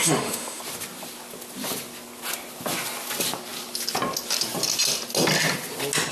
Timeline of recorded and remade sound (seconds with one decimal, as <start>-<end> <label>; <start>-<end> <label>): 0.0-0.6 remade; 0.6-6.1 recorded

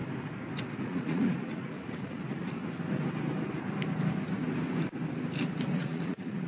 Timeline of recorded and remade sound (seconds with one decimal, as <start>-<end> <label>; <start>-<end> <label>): 0.0-0.8 recorded; 0.8-2.6 remade; 2.6-5.7 recorded; 5.7-6.5 remade